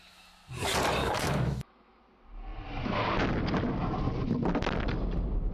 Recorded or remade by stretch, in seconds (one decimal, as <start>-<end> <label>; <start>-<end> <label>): 0.0-1.0 recorded; 1.0-2.0 remade; 2.0-5.5 recorded